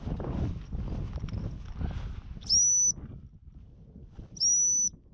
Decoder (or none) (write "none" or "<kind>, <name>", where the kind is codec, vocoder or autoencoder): none